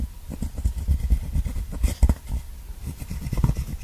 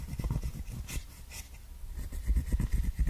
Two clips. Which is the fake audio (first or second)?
first